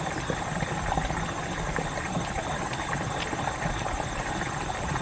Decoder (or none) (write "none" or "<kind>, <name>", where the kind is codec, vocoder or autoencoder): none